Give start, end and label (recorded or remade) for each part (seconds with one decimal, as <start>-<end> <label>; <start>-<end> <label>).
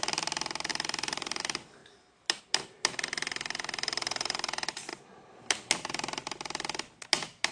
0.0-0.7 recorded; 0.7-1.4 remade; 1.4-7.5 recorded